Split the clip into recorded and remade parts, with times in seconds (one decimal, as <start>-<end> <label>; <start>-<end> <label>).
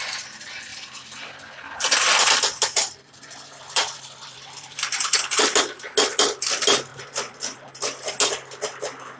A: 0.0-0.7 recorded; 0.7-5.4 remade; 5.4-6.9 recorded; 6.9-7.7 remade; 7.7-9.2 recorded